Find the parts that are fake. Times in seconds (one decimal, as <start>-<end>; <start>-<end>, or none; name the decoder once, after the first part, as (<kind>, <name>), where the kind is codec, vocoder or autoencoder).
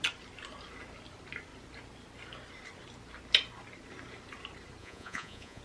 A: 4.8-5.6 (vocoder, Vocos)